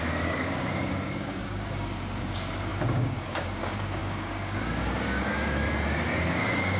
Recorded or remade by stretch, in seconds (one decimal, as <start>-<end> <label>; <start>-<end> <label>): 0.0-5.6 remade; 5.6-6.1 recorded; 6.1-6.8 remade